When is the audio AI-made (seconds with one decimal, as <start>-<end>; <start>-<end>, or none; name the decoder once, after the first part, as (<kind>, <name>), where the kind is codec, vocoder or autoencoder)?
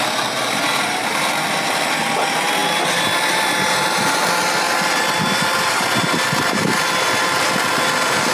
none